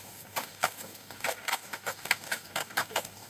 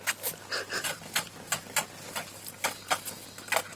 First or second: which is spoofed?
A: first